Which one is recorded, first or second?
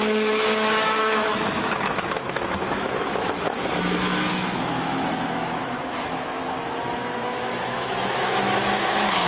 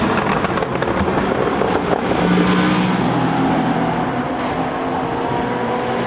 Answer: second